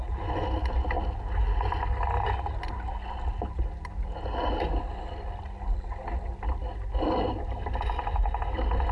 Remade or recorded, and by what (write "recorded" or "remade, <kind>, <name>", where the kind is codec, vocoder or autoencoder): recorded